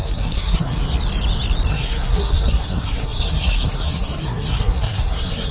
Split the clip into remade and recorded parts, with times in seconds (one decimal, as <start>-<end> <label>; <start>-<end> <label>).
0.0-0.8 remade; 0.8-1.7 recorded; 1.7-5.5 remade